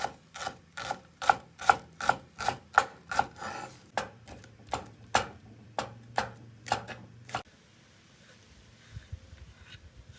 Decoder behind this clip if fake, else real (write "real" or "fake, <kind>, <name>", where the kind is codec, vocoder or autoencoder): real